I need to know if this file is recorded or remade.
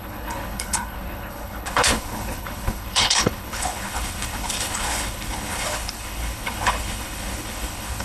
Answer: remade